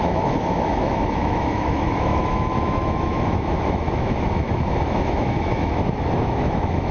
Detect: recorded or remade remade